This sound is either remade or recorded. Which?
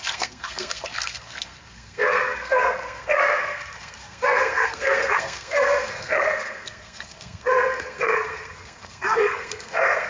remade